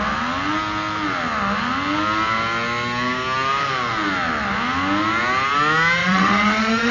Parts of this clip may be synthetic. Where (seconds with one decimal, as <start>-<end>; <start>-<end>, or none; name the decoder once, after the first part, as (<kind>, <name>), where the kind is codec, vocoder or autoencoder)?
6.0-6.9 (vocoder, WaveNeXt)